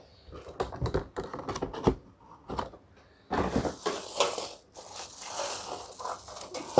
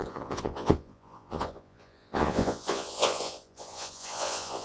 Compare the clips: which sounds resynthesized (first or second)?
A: second